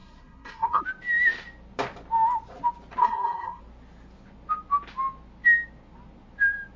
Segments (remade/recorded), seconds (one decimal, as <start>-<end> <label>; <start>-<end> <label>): 0.0-0.8 remade; 0.8-3.0 recorded; 3.0-3.6 remade; 3.6-6.8 recorded